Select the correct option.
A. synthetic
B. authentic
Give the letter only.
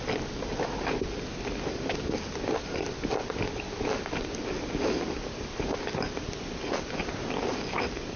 B